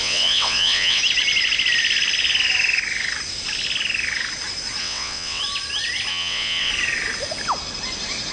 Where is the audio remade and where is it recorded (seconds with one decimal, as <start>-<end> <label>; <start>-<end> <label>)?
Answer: 0.0-1.0 remade; 1.0-4.8 recorded; 4.8-5.4 remade; 5.4-6.1 recorded; 6.1-6.7 remade; 6.7-8.3 recorded